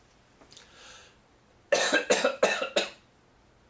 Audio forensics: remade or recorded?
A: recorded